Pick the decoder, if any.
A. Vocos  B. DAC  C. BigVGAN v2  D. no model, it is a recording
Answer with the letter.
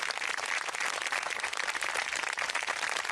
C